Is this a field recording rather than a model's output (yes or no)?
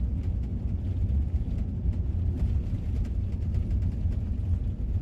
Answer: yes